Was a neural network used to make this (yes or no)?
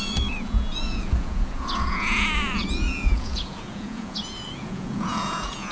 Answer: yes